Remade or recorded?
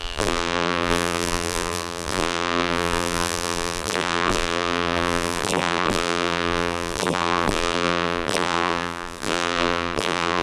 remade